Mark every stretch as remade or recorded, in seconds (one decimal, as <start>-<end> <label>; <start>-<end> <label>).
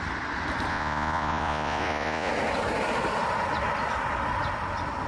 0.0-0.7 recorded; 0.7-2.3 remade; 2.3-5.1 recorded